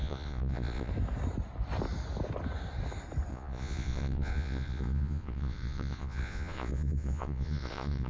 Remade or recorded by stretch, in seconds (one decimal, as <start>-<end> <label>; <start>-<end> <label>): 0.0-0.9 remade; 0.9-3.3 recorded; 3.3-8.1 remade